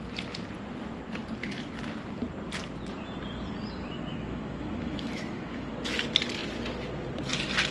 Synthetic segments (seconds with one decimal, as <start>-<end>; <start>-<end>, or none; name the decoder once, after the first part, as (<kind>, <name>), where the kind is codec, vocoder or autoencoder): 4.1-5.7 (autoencoder, DAC-VAE)